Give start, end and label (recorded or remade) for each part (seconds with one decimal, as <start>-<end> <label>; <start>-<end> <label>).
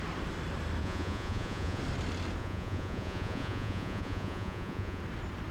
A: 0.0-0.8 recorded; 0.8-1.8 remade; 1.8-2.4 recorded; 2.4-5.0 remade; 5.0-5.5 recorded